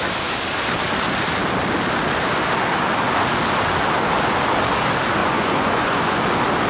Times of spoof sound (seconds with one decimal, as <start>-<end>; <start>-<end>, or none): 5.2-6.2